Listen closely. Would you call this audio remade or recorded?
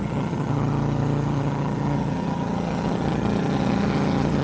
remade